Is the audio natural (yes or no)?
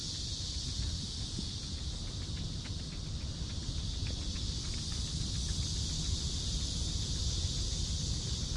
yes